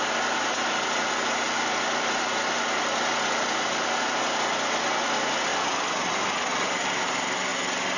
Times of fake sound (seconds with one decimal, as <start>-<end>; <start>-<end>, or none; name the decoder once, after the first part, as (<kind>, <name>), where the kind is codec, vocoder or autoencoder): none